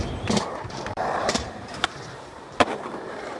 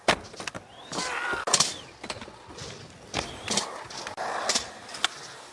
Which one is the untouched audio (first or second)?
second